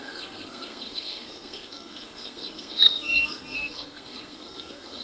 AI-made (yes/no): yes